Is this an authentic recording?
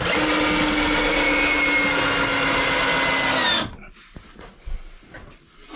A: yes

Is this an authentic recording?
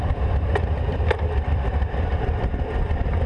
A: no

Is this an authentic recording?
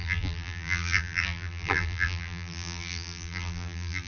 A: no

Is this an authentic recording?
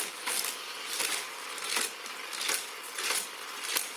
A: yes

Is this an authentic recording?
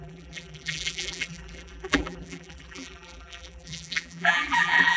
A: no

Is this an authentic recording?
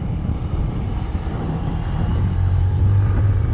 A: no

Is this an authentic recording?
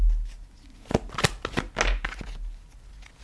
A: yes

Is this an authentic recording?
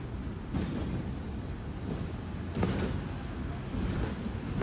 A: yes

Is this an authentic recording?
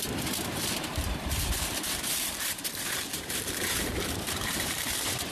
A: no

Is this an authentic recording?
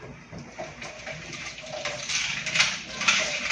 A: no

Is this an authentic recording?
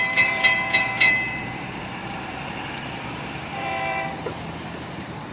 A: no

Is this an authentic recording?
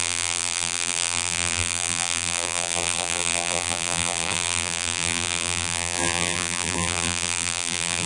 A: no